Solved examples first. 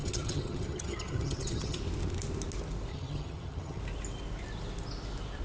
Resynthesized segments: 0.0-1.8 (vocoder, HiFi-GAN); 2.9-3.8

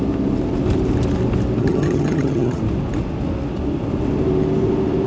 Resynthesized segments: 1.6-2.6 (vocoder, HiFi-GAN)

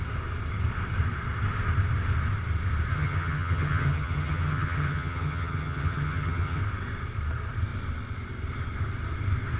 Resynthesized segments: 2.9-6.6 (vocoder, HiFi-GAN)

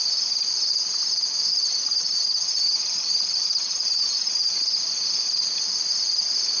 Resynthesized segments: 1.5-4.5 (vocoder, HiFi-GAN)

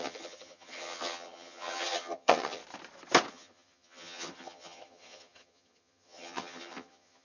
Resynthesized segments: 0.0-2.6 (vocoder, HiFi-GAN); 3.3-7.2

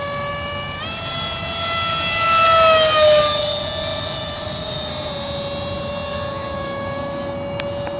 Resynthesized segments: none